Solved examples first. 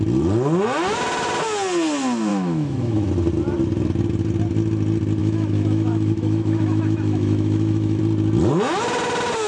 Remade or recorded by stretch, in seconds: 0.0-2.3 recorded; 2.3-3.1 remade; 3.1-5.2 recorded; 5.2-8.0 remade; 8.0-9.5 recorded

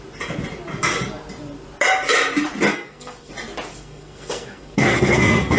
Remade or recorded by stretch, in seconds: 0.0-2.7 recorded; 2.7-3.3 remade; 3.3-3.7 recorded; 3.7-5.6 remade